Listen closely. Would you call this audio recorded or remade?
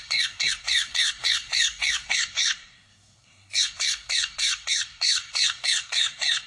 remade